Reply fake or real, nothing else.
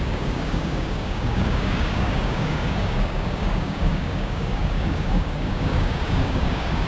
fake